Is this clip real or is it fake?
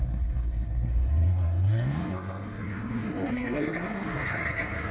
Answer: fake